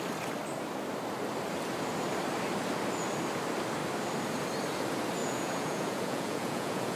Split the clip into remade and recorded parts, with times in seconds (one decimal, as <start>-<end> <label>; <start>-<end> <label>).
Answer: 0.0-5.2 recorded; 5.2-7.0 remade